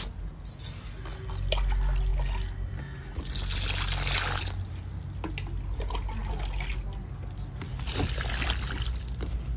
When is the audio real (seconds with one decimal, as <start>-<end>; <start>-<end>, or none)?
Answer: 0.0-9.6